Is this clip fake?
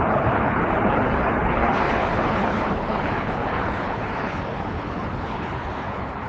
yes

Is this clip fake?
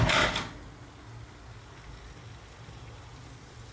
no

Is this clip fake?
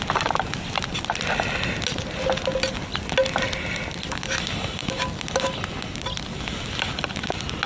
no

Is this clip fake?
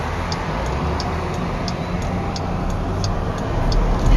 no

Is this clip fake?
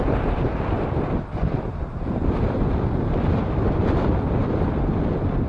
no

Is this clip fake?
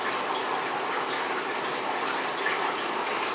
no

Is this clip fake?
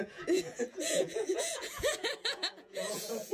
yes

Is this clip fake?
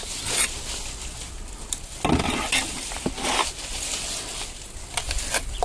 no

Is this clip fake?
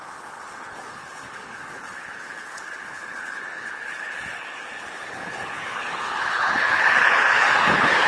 yes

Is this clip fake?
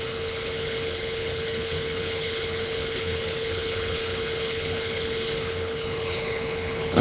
yes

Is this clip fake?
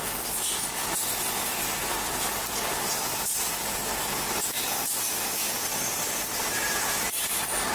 no